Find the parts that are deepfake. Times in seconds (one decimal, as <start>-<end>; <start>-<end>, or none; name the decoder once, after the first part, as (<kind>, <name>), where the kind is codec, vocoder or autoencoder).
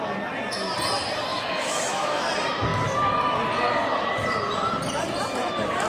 1.3-2.2 (autoencoder, DAC-VAE)